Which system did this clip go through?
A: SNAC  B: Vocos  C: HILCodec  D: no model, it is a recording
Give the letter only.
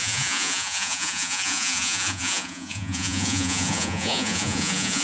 B